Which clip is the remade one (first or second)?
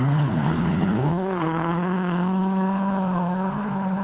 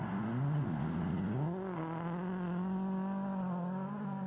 first